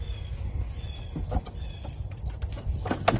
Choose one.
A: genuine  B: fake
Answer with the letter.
A